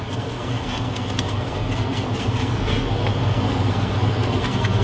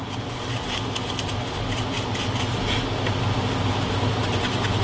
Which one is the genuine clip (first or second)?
second